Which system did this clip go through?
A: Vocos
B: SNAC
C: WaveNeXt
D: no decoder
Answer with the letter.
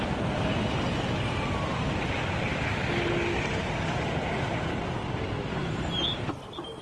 D